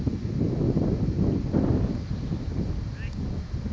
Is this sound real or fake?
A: real